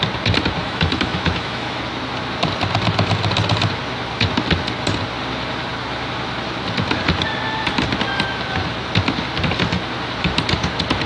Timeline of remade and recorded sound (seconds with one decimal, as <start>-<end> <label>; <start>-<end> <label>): 0.0-0.6 recorded; 0.6-1.8 remade; 1.8-11.1 recorded